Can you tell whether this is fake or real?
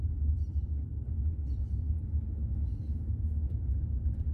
real